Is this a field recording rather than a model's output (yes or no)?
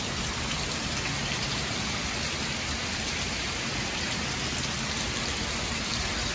yes